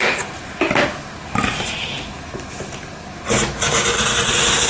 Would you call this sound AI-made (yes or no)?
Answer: no